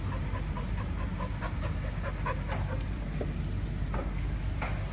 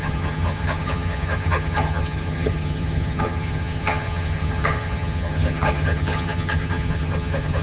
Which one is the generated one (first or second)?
second